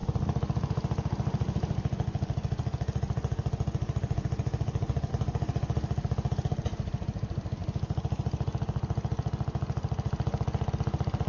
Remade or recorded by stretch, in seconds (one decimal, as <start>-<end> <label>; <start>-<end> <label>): 0.0-11.3 recorded